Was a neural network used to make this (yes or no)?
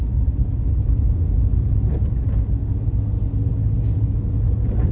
no